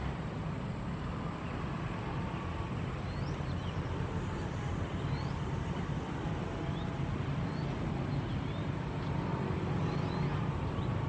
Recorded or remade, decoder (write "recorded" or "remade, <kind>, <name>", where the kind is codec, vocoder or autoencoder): remade, vocoder, BigVGAN v2